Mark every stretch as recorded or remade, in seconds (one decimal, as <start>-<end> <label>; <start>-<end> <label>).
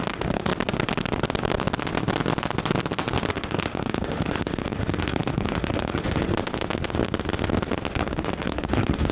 0.0-0.5 remade; 0.5-3.3 recorded; 3.3-6.3 remade; 6.3-7.9 recorded; 7.9-9.1 remade